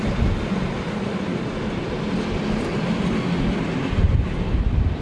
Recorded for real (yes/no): yes